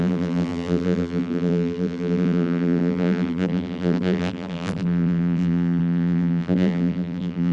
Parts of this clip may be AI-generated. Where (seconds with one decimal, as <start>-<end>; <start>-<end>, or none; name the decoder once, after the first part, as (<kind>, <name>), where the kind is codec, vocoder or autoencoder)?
0.0-7.5 (vocoder, BigVGAN v2)

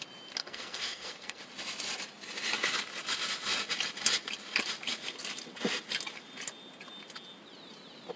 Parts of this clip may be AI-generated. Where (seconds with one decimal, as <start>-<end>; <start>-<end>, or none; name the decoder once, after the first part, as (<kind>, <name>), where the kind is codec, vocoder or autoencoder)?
0.4-1.4 (codec, SNAC)